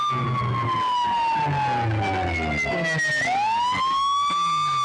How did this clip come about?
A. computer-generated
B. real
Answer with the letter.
B